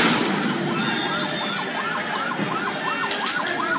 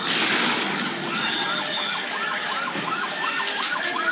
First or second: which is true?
first